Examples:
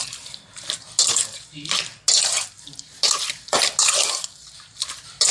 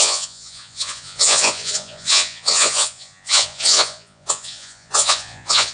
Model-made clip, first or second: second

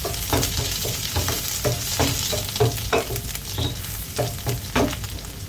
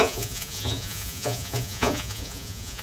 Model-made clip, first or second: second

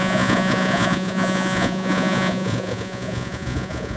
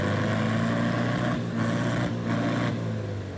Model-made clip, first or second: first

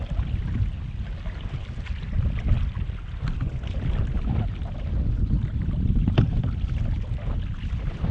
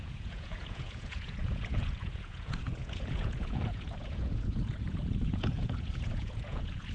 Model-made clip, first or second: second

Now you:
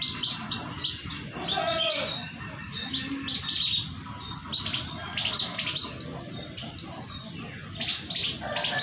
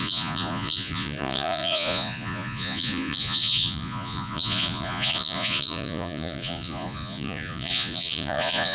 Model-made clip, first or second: second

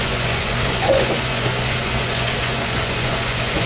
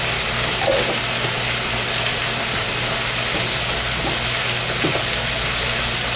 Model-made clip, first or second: first